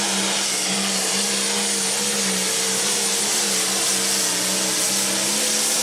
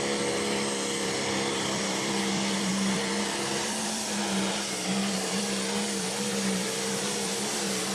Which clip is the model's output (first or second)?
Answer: second